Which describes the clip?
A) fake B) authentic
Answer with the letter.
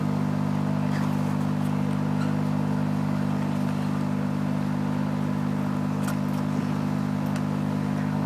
B